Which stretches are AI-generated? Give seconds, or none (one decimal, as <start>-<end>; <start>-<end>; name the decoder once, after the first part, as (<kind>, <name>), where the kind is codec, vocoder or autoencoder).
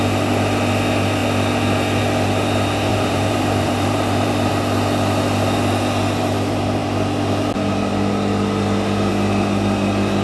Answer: 2.9-4.5 (vocoder, BigVGAN v2)